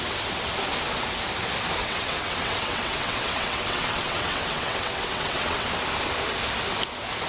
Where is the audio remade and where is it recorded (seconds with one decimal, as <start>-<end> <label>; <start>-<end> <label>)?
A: 0.0-1.8 recorded; 1.8-5.7 remade; 5.7-7.3 recorded